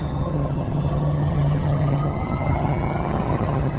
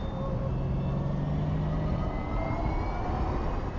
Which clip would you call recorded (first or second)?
second